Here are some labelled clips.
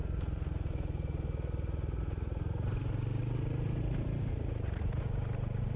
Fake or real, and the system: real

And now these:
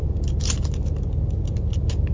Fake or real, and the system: real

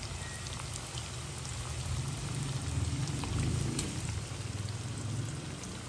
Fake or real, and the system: real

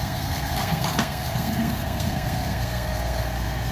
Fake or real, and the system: fake, codec, SNAC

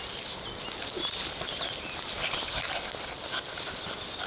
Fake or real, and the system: real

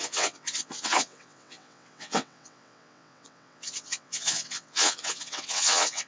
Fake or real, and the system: fake, vocoder, WaveNeXt